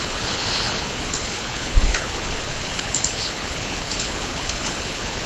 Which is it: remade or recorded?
remade